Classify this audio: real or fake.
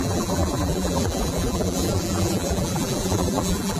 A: fake